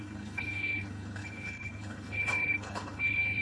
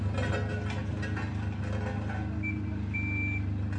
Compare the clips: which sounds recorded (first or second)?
second